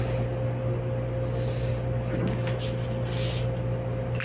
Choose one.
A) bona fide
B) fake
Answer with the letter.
A